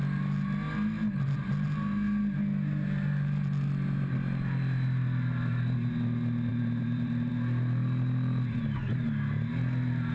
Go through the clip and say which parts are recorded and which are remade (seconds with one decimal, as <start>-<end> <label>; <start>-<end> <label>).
0.0-6.5 recorded; 6.5-7.3 remade; 7.3-10.1 recorded